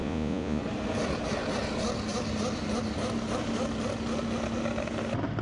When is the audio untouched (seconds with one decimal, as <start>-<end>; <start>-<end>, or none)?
0.6-5.4